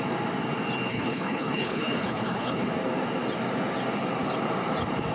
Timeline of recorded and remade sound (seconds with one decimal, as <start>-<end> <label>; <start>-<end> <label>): 0.0-0.9 recorded; 0.9-2.7 remade; 2.7-5.1 recorded